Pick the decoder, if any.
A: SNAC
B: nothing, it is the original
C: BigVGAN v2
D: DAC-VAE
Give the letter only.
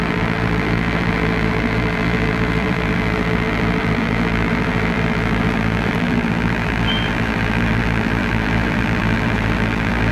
C